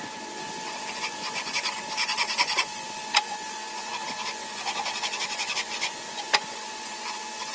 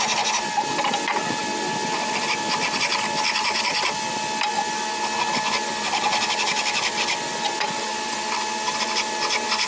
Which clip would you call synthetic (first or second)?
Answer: first